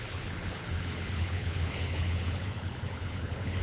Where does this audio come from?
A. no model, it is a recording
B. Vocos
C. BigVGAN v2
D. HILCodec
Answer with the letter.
D